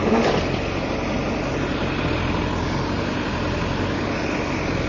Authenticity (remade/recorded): recorded